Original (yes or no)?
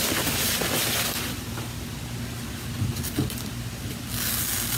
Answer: yes